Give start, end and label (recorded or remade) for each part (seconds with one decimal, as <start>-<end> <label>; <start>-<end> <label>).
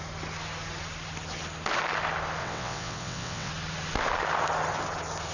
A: 0.0-2.4 recorded; 2.4-3.5 remade; 3.5-5.3 recorded